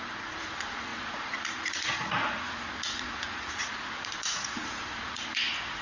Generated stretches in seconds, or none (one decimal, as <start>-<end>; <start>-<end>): 0.0-5.8